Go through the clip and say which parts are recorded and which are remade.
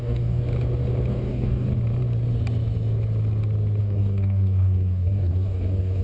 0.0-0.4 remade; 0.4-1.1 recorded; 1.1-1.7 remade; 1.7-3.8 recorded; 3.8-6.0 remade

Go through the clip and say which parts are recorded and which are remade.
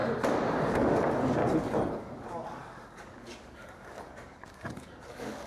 0.0-0.6 recorded; 0.6-1.4 remade; 1.4-2.0 recorded; 2.0-5.5 remade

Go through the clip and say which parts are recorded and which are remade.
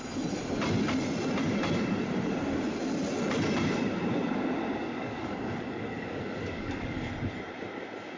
0.0-4.8 recorded; 4.8-7.1 remade; 7.1-8.2 recorded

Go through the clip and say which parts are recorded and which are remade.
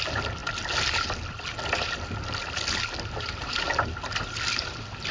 0.0-5.1 recorded